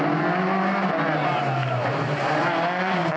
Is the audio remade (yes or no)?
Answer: no